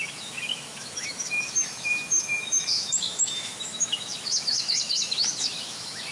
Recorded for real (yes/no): no